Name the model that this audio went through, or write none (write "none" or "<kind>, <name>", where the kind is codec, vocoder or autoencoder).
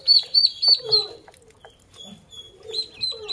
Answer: none